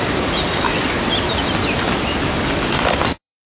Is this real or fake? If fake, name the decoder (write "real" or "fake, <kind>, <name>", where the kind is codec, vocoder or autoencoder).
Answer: fake, vocoder, BigVGAN v2